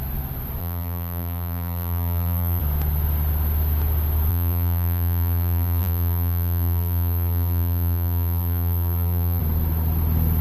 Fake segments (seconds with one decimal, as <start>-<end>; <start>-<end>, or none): 0.6-2.6; 4.3-9.4